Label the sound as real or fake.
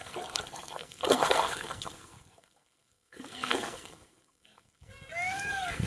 fake